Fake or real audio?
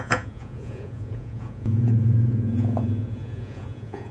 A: fake